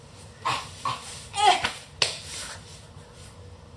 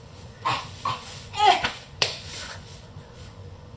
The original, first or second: first